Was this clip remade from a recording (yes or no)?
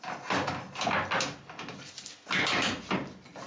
no